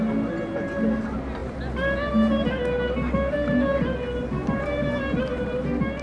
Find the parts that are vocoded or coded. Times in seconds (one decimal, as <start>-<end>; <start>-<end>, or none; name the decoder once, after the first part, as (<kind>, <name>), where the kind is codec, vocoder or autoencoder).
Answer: none